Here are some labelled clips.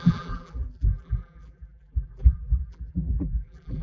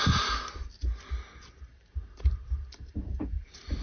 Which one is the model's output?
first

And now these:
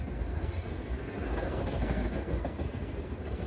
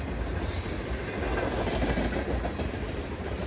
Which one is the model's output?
first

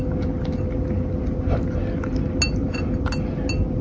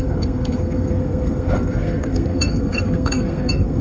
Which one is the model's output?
second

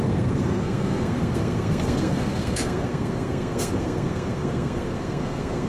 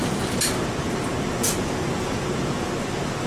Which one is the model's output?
first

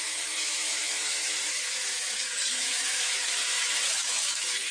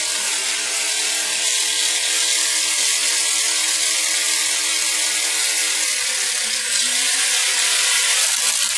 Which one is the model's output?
first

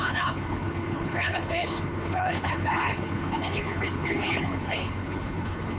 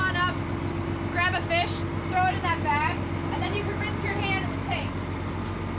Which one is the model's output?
first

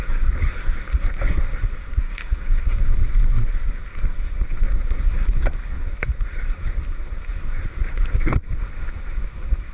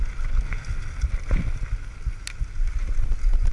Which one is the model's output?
first